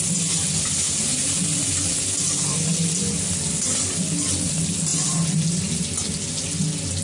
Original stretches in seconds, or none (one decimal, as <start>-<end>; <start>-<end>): 0.0-7.0